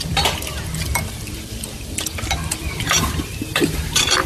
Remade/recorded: remade